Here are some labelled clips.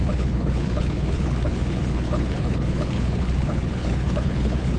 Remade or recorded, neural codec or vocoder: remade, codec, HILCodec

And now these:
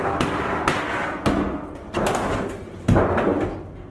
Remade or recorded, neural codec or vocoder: recorded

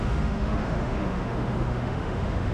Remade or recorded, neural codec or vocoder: remade, autoencoder, DAC-VAE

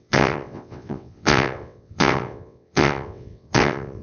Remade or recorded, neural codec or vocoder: remade, vocoder, WaveNeXt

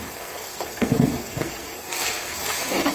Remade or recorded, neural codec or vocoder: remade, codec, SNAC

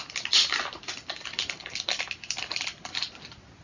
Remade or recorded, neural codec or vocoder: recorded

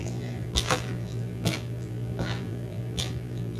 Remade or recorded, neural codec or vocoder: remade, vocoder, BigVGAN v2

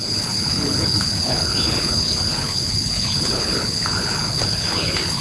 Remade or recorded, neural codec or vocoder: remade, codec, HILCodec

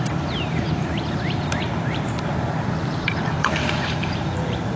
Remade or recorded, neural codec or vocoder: remade, vocoder, BigVGAN v2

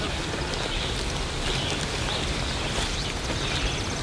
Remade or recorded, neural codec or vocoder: recorded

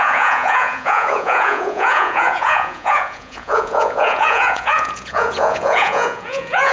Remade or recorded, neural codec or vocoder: remade, vocoder, Vocos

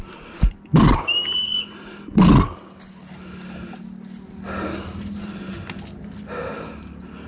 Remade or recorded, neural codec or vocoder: recorded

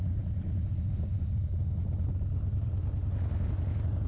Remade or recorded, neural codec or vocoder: recorded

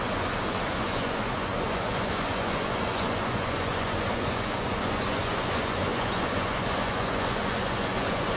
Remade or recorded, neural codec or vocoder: remade, vocoder, Vocos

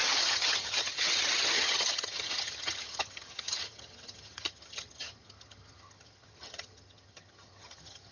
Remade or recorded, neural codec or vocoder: remade, vocoder, HiFi-GAN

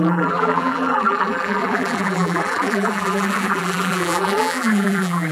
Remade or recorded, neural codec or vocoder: remade, vocoder, BigVGAN v2